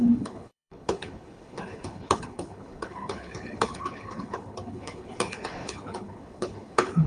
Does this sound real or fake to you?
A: fake